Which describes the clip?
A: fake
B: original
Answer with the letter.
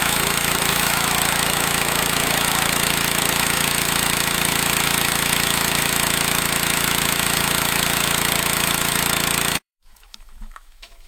A